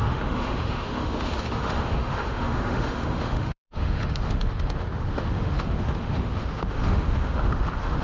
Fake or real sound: fake